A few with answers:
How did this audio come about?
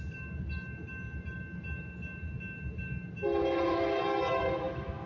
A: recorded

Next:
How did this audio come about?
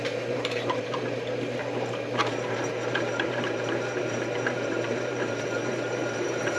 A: remade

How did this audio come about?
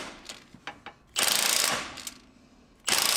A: recorded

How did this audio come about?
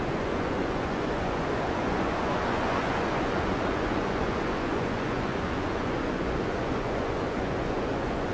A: remade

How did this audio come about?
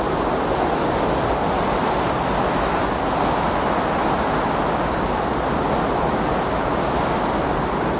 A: recorded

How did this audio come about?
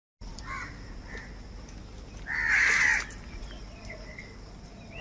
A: recorded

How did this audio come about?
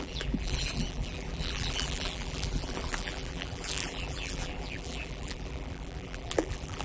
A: remade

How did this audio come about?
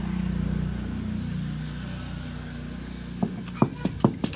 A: recorded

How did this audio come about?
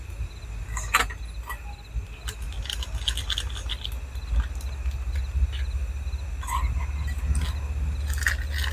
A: recorded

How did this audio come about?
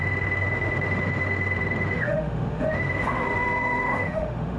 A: remade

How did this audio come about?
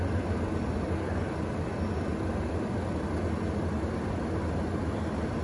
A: recorded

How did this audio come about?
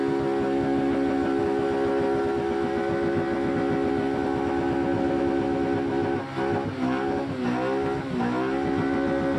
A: recorded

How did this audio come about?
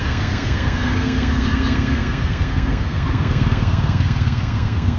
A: remade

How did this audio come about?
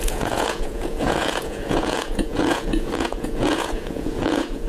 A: remade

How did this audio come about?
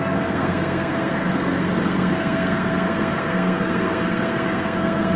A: remade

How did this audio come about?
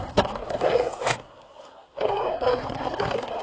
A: remade